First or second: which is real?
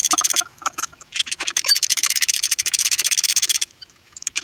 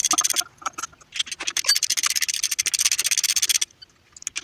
second